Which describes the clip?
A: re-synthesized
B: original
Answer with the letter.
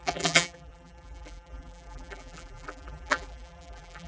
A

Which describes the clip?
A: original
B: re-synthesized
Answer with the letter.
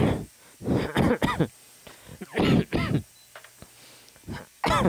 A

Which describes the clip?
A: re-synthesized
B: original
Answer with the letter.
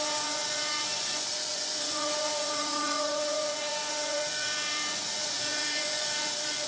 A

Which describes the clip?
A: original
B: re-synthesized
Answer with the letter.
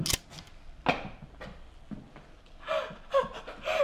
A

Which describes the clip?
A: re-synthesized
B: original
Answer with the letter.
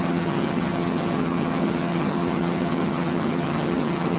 A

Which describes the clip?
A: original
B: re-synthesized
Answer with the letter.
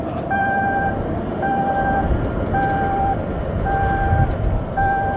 A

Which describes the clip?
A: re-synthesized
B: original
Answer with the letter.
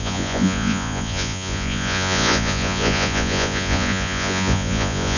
A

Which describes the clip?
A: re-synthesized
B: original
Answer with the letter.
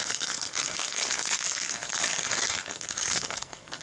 A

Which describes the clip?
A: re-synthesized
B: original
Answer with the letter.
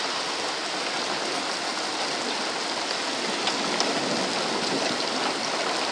B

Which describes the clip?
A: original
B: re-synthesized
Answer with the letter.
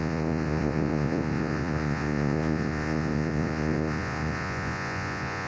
B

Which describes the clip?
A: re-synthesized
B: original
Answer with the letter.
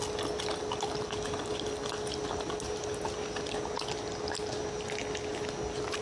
B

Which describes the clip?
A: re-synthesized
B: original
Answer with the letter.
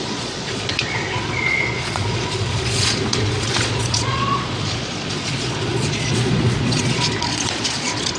A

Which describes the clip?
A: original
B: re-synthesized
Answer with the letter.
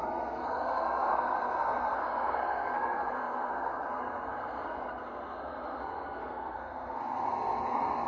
B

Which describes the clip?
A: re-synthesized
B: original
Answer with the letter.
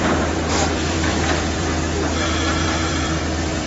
A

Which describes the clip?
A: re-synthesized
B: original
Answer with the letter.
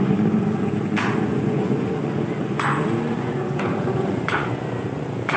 A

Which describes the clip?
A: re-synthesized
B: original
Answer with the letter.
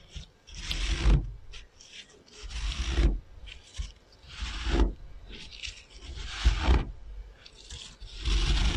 B